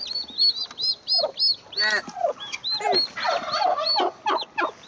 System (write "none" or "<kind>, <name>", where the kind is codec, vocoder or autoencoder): none